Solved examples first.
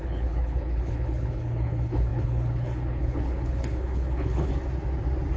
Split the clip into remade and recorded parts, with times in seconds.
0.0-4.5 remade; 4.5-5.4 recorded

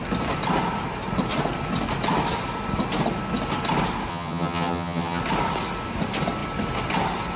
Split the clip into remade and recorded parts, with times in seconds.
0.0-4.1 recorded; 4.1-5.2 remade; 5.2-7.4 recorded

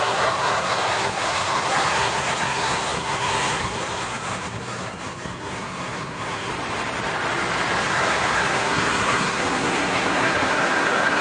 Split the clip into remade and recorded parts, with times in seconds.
0.0-6.5 remade; 6.5-7.8 recorded; 7.8-11.2 remade

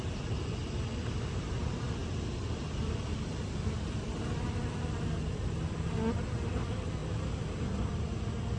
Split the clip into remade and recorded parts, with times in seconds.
0.0-8.6 recorded

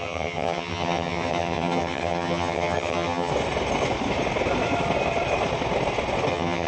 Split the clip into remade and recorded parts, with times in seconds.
0.0-3.3 remade; 3.3-6.3 recorded; 6.3-6.7 remade